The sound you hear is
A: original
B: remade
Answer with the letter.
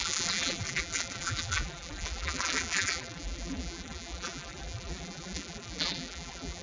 B